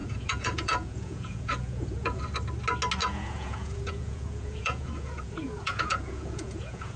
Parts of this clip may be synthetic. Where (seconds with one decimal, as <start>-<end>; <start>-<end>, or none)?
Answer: 0.0-2.2; 3.0-7.0

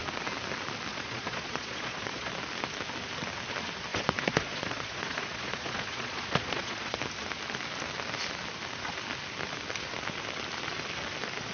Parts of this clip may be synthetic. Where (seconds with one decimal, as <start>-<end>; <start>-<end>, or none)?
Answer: 0.9-2.3; 3.9-7.0

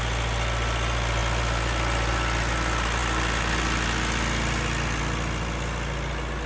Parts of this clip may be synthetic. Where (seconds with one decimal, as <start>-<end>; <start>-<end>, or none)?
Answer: none

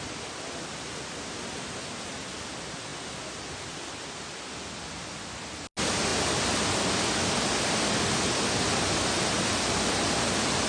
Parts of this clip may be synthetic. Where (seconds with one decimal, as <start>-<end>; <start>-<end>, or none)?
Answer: none

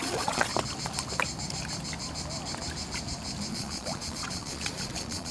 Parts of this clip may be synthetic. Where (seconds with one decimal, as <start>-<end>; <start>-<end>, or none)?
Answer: 0.0-0.5; 3.5-5.3

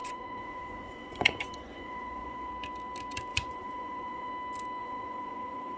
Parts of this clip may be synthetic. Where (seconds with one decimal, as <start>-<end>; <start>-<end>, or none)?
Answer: 0.0-2.5; 3.3-4.3; 4.8-5.8